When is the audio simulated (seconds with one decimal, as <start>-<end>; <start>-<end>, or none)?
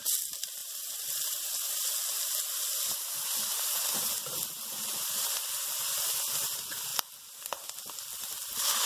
0.6-1.8